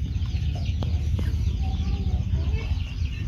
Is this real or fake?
real